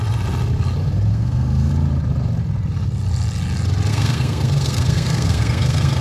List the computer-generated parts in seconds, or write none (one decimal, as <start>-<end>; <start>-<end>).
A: 1.1-1.7; 3.9-6.0

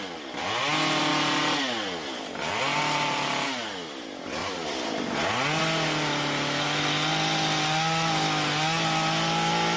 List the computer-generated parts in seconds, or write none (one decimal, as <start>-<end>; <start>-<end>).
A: none

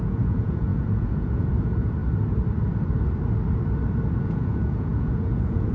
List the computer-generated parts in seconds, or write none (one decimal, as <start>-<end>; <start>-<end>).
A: 0.0-2.0; 4.2-5.7

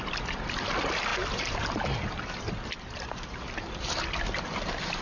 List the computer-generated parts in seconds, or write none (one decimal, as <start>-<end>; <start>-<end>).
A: none

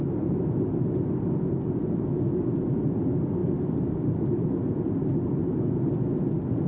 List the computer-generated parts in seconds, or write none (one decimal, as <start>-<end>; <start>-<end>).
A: 3.4-4.3